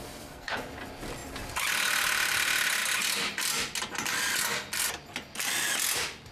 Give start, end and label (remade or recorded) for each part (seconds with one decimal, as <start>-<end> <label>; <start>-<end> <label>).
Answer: 0.0-0.6 remade; 0.6-6.3 recorded